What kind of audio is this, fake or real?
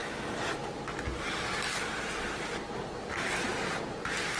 real